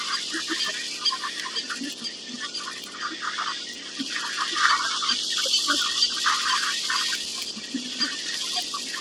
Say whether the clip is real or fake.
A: fake